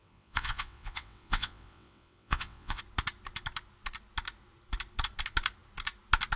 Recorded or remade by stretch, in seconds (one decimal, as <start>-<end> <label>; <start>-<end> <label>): 0.0-2.8 remade; 2.8-6.4 recorded

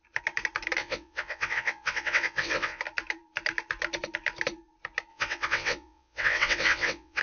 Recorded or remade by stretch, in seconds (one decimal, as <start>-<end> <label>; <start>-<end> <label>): 0.0-0.8 recorded; 0.8-2.8 remade; 2.8-5.1 recorded; 5.1-7.2 remade